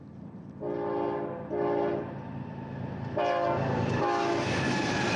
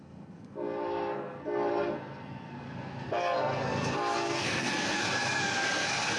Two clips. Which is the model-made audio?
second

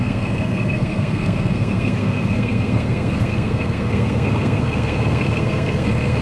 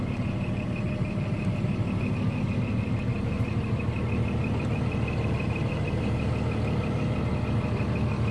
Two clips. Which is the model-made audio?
first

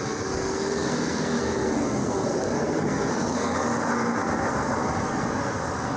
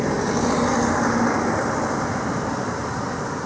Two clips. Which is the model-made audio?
first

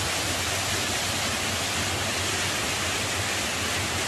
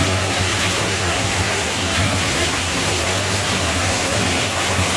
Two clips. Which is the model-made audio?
second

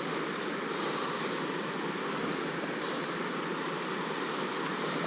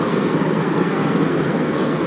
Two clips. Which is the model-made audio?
second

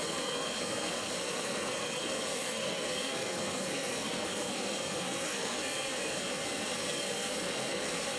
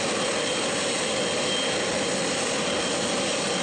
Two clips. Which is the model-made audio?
first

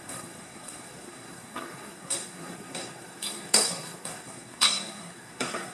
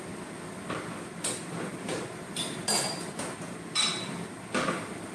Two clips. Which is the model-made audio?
first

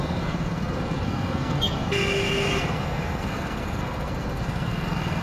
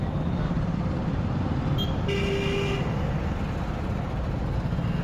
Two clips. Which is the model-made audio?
first